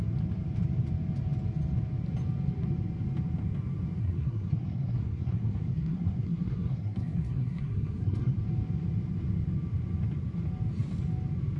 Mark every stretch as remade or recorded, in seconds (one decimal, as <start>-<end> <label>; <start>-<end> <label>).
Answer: 0.0-4.0 recorded; 4.0-8.4 remade; 8.4-11.6 recorded